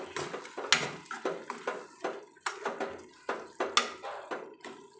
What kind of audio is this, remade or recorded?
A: recorded